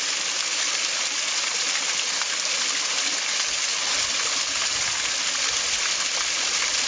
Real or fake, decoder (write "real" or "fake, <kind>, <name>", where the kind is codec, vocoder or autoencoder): real